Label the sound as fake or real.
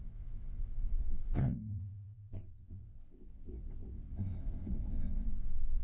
fake